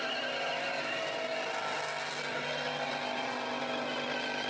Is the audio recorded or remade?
recorded